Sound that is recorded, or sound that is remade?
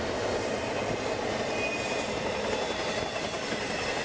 recorded